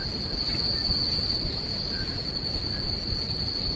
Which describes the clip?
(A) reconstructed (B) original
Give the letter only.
B